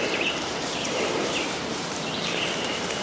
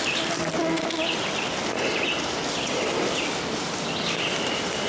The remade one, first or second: first